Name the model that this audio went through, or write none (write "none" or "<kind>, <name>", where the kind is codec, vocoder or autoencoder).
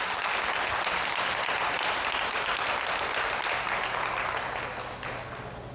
none